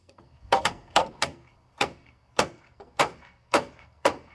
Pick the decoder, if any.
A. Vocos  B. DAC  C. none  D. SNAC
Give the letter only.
D